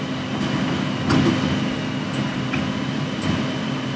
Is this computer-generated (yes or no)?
no